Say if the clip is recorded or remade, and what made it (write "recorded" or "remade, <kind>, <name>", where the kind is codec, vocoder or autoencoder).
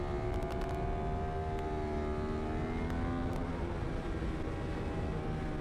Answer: recorded